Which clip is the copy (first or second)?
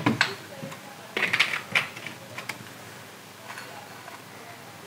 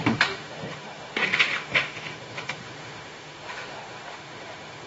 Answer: second